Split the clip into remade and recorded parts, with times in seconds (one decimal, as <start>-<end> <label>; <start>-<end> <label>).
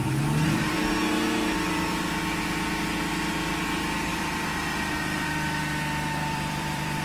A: 0.0-0.8 remade; 0.8-4.1 recorded; 4.1-5.6 remade; 5.6-6.2 recorded; 6.2-7.0 remade